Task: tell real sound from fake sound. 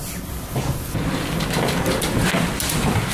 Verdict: real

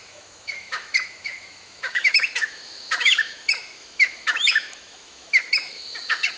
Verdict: fake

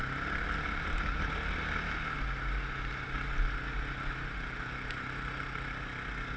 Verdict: real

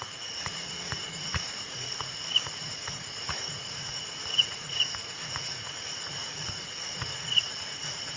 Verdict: fake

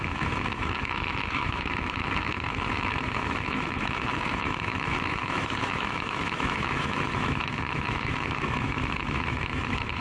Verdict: fake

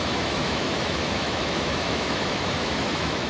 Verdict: fake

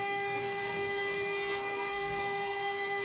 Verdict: fake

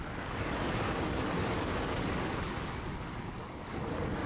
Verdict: fake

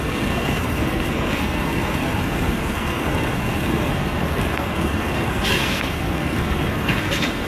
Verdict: fake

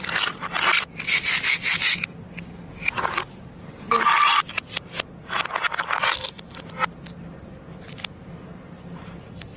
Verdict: real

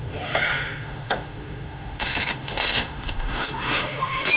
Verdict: fake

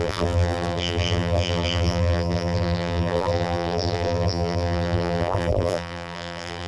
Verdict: fake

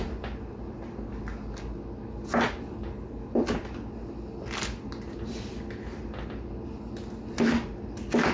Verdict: real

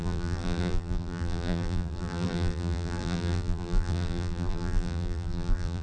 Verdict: fake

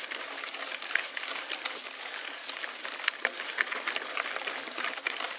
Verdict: real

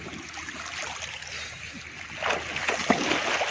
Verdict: real